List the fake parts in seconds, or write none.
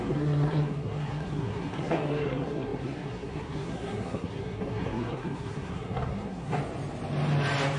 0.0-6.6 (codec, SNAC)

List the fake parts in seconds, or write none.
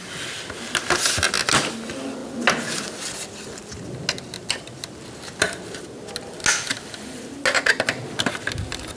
none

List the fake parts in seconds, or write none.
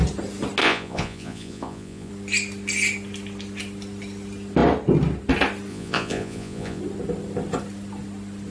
0.6-2.1 (vocoder, Vocos); 5.7-6.8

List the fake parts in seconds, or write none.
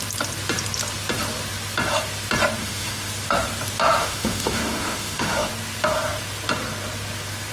2.6-3.1 (autoencoder, DAC-VAE); 4.0-5.5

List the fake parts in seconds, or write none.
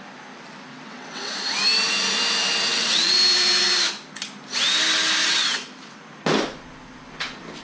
0.7-1.3 (vocoder, WaveNeXt); 2.7-3.2; 5.2-6.0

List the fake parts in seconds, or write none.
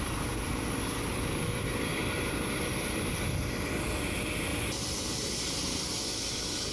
1.9-3.2 (vocoder, BigVGAN v2); 4.5-5.4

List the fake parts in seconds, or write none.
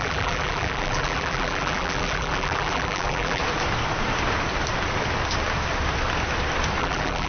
0.0-3.4 (vocoder, BigVGAN v2); 6.8-7.3